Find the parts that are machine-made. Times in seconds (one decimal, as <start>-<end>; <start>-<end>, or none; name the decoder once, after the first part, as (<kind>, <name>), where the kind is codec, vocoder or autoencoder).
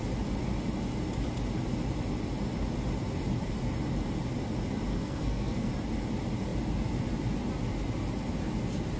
4.9-5.7 (codec, SNAC)